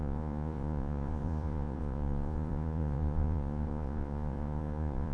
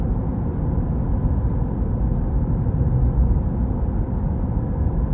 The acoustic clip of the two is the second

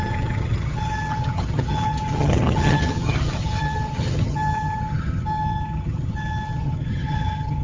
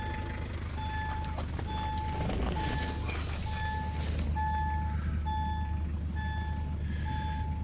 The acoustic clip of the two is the second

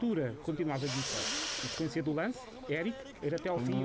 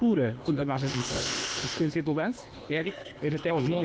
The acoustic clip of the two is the first